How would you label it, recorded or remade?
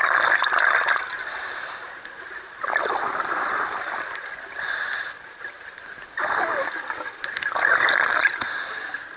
recorded